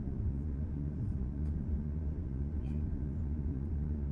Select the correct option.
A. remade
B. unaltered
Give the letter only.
A